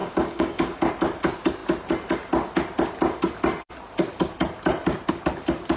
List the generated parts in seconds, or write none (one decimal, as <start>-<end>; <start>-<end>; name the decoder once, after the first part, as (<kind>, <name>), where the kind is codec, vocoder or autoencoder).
0.0-0.9 (codec, DAC)